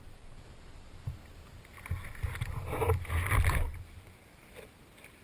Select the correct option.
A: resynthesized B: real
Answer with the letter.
B